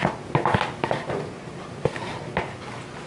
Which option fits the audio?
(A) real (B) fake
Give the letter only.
A